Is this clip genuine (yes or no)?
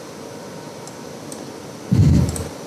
yes